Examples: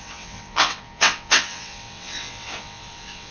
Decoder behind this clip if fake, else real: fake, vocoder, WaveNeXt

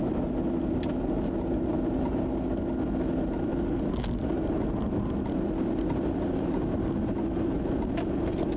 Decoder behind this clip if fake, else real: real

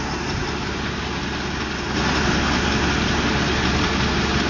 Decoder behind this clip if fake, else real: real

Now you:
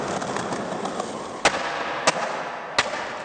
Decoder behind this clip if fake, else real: real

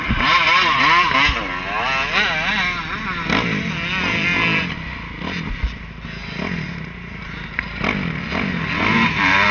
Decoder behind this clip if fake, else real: real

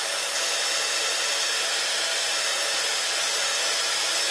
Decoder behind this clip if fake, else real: real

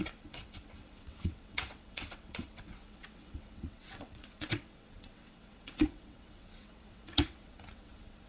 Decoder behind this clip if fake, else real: fake, vocoder, WaveNeXt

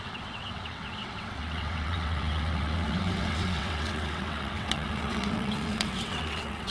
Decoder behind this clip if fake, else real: fake, vocoder, WaveNeXt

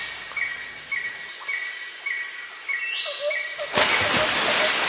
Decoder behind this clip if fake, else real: real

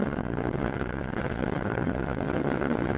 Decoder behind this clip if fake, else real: fake, vocoder, WaveNeXt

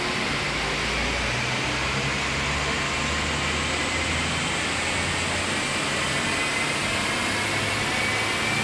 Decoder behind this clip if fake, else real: real